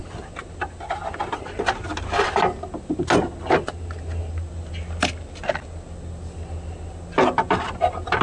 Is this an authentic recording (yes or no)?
yes